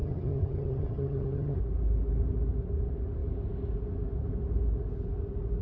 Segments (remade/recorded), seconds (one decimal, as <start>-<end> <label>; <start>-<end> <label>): 0.0-1.6 remade; 1.6-5.6 recorded